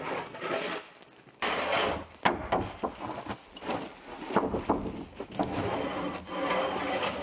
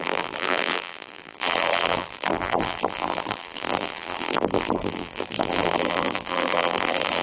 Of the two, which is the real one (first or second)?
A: first